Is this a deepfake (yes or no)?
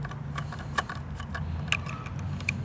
no